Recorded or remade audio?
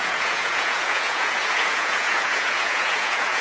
remade